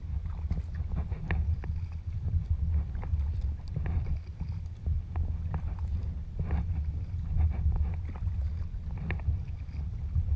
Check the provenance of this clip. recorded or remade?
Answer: recorded